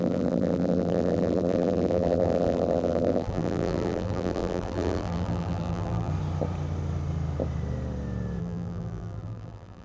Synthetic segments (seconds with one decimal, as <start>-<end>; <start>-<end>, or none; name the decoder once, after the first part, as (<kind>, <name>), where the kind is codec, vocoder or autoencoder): 0.0-6.1 (vocoder, BigVGAN v2); 8.4-9.8

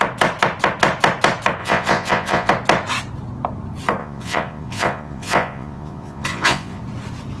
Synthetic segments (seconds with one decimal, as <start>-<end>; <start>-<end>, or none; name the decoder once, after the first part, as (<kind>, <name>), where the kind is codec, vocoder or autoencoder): 1.6-2.5 (vocoder, Vocos); 4.0-6.8

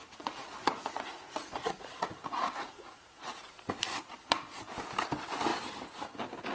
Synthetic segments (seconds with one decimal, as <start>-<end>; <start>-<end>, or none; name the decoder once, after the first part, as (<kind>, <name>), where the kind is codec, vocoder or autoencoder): 0.0-3.3 (vocoder, Vocos); 4.0-4.7

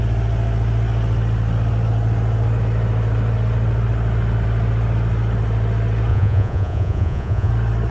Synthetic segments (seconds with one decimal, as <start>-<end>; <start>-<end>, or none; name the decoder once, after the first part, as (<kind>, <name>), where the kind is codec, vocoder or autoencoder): 6.1-7.5 (vocoder, Vocos)